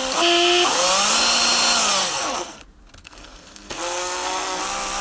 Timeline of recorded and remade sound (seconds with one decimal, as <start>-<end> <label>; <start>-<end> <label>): 0.0-2.0 recorded; 2.0-2.6 remade; 2.6-3.0 recorded; 3.0-4.6 remade; 4.6-5.0 recorded

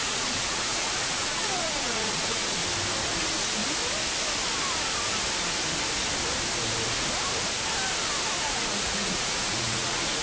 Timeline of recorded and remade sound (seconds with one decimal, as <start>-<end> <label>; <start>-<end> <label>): 0.0-2.6 remade; 2.6-3.2 recorded; 3.2-3.6 remade; 3.6-8.4 recorded; 8.4-10.2 remade

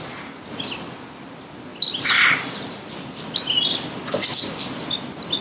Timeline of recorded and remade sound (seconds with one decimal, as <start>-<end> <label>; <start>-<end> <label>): 0.0-5.4 recorded

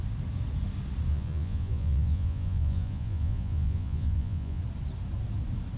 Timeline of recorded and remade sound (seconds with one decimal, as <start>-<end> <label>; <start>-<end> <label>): 0.0-1.1 recorded; 1.1-4.6 remade; 4.6-5.8 recorded

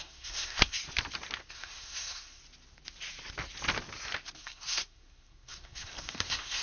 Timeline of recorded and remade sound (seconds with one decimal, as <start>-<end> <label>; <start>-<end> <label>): 0.0-0.8 remade; 0.8-1.5 recorded; 1.5-2.4 remade; 2.4-4.4 recorded; 4.4-6.6 remade